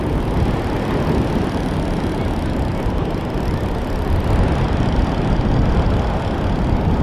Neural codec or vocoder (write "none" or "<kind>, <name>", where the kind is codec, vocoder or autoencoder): none